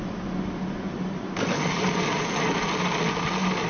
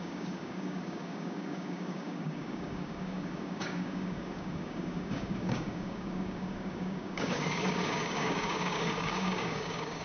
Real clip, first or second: first